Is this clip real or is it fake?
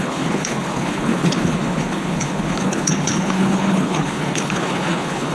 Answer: fake